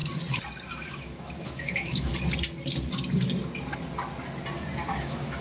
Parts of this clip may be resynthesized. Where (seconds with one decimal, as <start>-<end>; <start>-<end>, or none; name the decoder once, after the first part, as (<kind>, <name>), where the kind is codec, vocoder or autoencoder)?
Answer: 0.7-2.1 (autoencoder, DAC-VAE); 4.9-5.4